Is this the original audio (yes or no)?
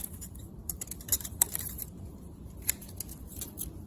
no